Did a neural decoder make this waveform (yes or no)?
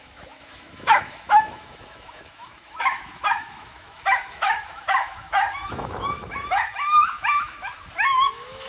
yes